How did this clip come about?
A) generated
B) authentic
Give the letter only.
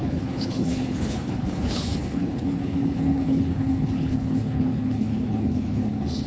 A